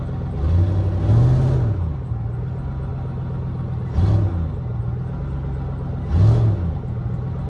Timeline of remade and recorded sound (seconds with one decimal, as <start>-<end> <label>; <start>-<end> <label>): 0.0-7.5 recorded